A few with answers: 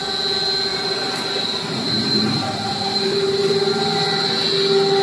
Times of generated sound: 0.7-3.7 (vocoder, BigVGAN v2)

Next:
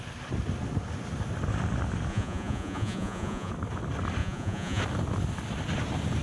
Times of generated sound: 2.1-3.5 (vocoder, Vocos); 4.2-4.8

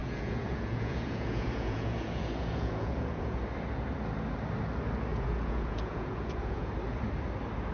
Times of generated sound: 0.0-3.4 (vocoder, Vocos); 5.1-6.7

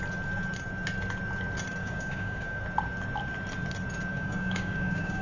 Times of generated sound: 1.8-2.6 (codec, DAC); 4.1-5.2

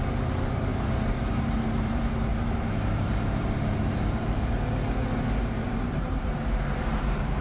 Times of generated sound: 0.0-0.7 (vocoder, BigVGAN v2); 1.2-7.4

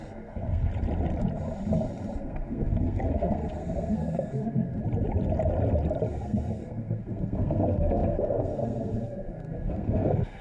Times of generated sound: 0.0-0.7 (codec, SNAC); 2.2-4.8; 6.1-10.4